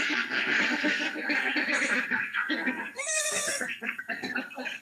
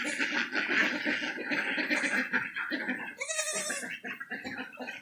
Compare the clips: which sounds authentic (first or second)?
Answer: second